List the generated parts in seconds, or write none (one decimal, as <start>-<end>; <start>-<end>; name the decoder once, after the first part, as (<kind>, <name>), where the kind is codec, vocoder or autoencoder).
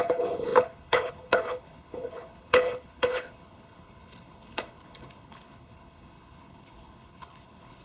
0.0-7.8 (codec, HILCodec)